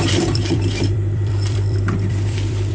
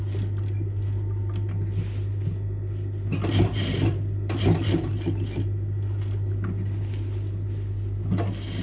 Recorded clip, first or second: second